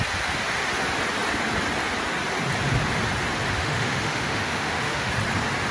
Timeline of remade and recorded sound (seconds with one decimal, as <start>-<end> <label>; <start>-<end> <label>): 0.0-3.6 recorded; 3.6-5.1 remade; 5.1-5.7 recorded